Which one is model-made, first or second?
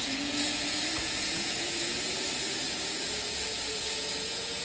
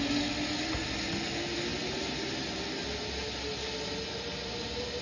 first